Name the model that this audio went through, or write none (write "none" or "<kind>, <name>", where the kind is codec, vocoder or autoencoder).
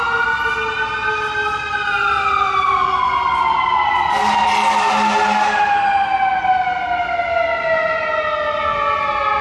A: none